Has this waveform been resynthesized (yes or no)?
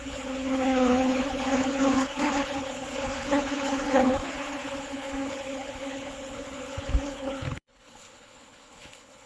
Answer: yes